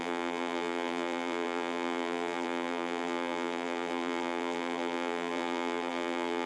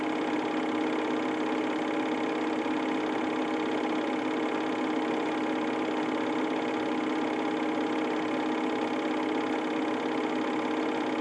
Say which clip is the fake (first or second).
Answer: first